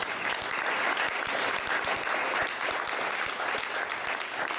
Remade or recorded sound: recorded